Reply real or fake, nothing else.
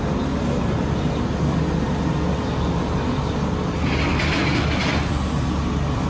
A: real